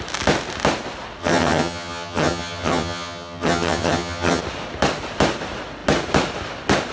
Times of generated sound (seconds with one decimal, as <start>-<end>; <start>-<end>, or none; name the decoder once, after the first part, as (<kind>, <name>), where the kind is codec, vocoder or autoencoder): 1.2-4.4 (vocoder, HiFi-GAN)

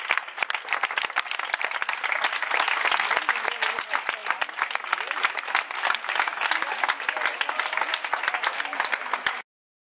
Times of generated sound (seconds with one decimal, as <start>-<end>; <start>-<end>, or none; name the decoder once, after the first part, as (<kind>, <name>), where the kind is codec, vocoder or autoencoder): none

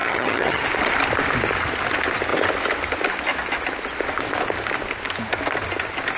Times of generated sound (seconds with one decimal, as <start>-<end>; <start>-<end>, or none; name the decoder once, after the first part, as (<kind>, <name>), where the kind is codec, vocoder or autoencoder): 0.0-0.6 (vocoder, HiFi-GAN)